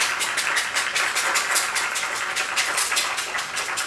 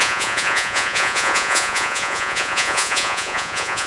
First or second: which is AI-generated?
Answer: second